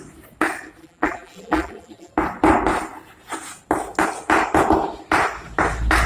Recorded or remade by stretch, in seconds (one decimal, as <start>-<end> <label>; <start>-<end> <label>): 0.0-0.8 recorded; 0.8-2.1 remade; 2.1-6.1 recorded